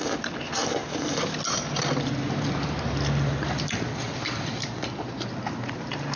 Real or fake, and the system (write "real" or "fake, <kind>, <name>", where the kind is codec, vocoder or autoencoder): real